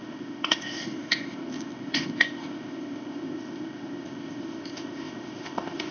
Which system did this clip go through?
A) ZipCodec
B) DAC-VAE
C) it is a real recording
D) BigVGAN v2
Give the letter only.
A